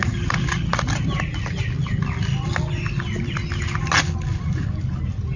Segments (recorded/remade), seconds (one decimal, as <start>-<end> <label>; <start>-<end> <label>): 0.0-5.4 recorded